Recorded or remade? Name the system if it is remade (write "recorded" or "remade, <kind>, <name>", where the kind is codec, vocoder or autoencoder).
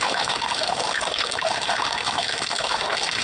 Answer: remade, autoencoder, DAC-VAE